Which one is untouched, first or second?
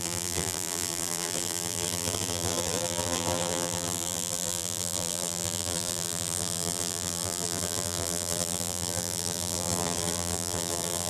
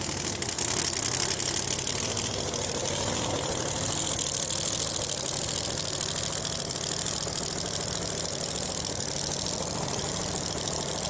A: second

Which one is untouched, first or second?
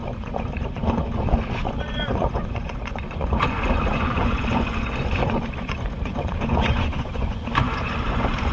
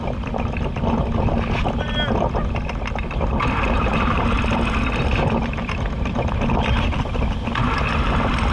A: second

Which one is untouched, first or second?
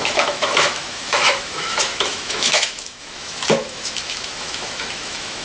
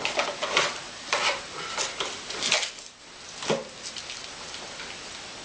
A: second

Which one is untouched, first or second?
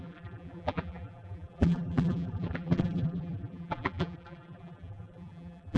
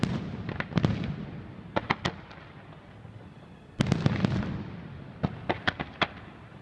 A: second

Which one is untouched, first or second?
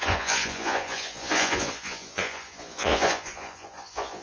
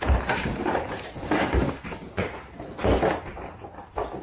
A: second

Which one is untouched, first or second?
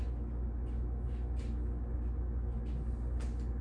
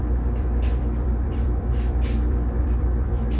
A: first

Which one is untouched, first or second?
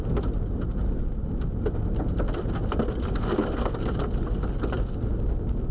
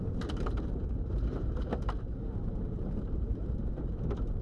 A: first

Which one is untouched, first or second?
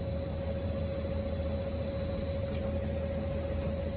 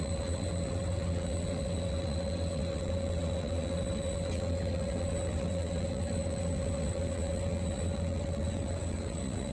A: first